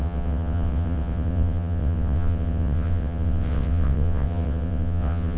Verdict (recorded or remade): remade